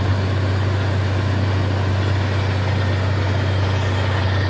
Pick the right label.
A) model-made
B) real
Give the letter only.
B